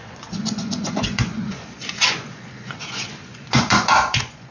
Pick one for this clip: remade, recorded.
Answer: remade